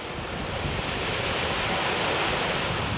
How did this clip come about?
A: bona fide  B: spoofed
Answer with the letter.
A